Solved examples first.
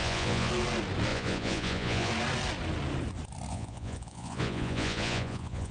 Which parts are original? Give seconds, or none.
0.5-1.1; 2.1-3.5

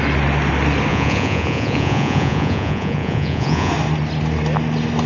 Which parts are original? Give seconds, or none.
0.0-0.9; 3.7-5.1